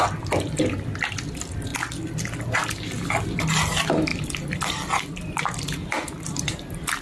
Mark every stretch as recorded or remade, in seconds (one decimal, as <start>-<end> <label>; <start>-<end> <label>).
0.0-5.8 recorded; 5.8-6.4 remade; 6.4-7.0 recorded